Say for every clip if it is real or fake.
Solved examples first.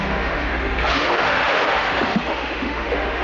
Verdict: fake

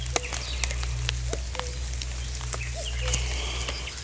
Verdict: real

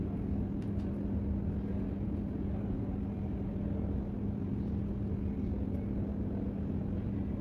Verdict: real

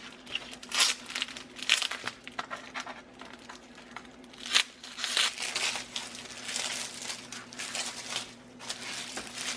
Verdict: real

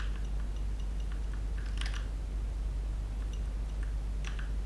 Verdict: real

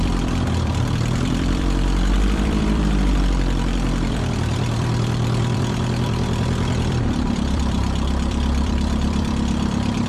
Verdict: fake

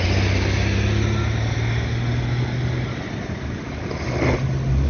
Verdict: real